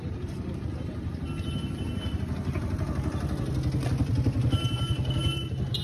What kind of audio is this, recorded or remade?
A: recorded